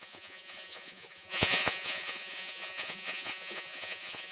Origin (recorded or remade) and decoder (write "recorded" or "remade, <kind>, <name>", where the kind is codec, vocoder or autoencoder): remade, vocoder, Vocos